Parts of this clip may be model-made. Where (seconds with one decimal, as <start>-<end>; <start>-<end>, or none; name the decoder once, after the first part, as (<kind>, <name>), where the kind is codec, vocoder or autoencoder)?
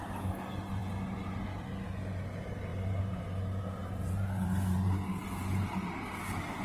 2.7-3.2 (vocoder, BigVGAN v2); 3.8-6.1